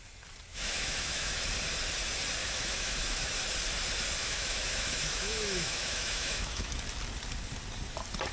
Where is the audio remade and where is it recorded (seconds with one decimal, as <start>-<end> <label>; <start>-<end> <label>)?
0.0-0.5 recorded; 0.5-1.4 remade; 1.4-2.4 recorded; 2.4-3.3 remade; 3.3-4.2 recorded; 4.2-6.7 remade; 6.7-8.3 recorded